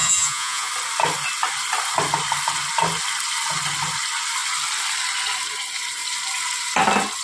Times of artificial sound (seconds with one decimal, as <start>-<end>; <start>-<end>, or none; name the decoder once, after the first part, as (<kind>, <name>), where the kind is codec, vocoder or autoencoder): 0.0-0.7 (vocoder, Vocos)